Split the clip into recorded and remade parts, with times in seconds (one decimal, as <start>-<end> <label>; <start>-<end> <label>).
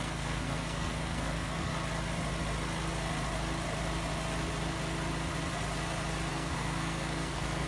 0.0-1.7 remade; 1.7-6.3 recorded; 6.3-7.7 remade